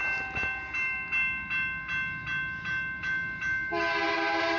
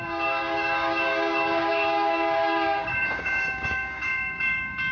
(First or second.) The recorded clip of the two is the first